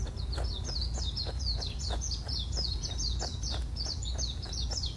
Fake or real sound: fake